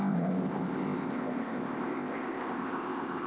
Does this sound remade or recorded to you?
remade